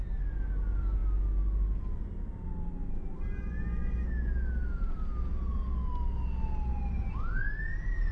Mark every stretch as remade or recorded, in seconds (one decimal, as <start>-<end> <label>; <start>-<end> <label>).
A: 0.0-8.1 recorded